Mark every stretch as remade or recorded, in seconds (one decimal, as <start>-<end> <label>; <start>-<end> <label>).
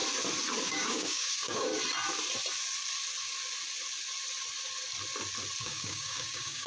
0.0-0.6 recorded; 0.6-1.7 remade; 1.7-5.6 recorded; 5.6-6.7 remade